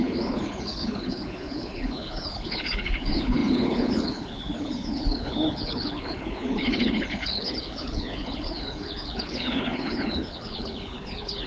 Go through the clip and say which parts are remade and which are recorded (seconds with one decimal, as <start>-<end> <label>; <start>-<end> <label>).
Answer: 0.0-11.5 remade